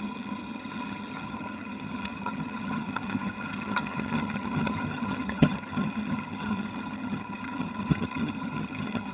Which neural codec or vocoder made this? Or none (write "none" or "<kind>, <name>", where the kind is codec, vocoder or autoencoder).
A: vocoder, HiFi-GAN